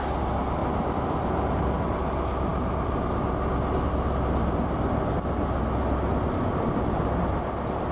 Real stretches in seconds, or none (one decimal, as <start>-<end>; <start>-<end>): 0.0-0.6; 1.8-7.9